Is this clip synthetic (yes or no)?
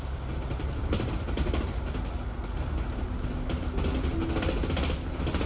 no